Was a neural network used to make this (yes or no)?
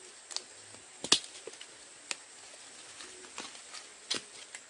no